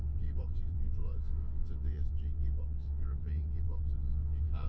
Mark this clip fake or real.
fake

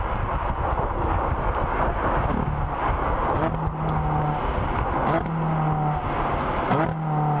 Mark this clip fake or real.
real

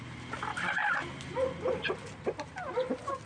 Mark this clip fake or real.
real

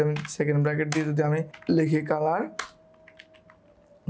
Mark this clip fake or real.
real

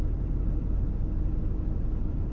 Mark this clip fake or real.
real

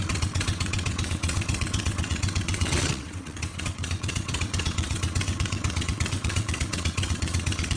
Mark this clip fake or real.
fake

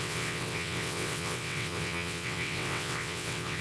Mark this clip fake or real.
fake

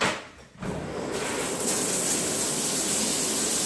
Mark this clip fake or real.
real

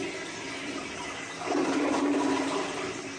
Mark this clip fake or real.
real